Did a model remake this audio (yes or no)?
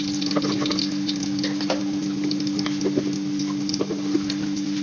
no